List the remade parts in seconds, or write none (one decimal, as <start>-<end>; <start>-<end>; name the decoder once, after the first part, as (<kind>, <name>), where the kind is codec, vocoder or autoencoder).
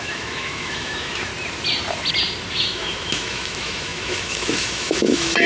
0.0-1.3 (autoencoder, DAC-VAE); 2.5-5.5